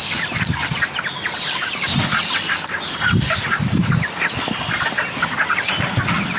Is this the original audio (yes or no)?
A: yes